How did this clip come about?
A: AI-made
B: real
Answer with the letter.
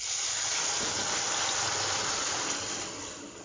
B